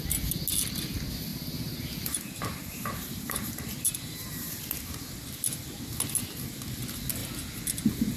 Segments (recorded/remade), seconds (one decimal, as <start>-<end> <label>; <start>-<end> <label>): 0.0-1.3 recorded; 1.3-4.6 remade; 4.6-8.2 recorded